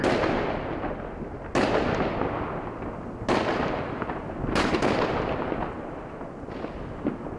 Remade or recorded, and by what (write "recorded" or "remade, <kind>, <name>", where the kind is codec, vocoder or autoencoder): recorded